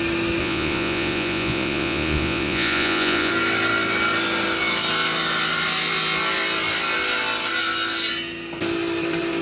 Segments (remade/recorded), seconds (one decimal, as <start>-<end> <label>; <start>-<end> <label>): 0.0-0.4 recorded; 0.4-3.3 remade; 3.3-9.4 recorded